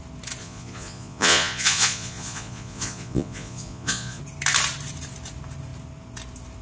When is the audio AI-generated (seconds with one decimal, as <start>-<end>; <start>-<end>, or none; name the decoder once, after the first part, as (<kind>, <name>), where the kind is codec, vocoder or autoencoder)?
0.4-4.2 (vocoder, Vocos)